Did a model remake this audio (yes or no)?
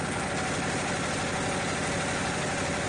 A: no